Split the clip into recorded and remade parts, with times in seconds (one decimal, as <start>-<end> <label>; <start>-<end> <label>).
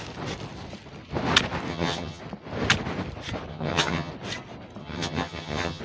0.0-1.7 recorded; 1.7-2.2 remade; 2.2-3.5 recorded; 3.5-4.1 remade; 4.1-4.8 recorded; 4.8-5.8 remade